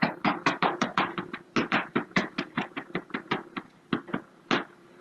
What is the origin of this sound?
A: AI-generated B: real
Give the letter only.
A